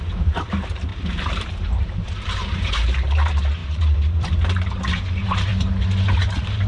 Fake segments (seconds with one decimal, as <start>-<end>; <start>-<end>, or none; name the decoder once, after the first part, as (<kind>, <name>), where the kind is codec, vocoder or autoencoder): 0.0-5.5 (vocoder, BigVGAN v2); 6.2-6.7